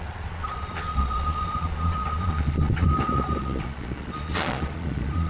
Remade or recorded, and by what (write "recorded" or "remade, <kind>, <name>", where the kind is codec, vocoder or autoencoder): remade, vocoder, Vocos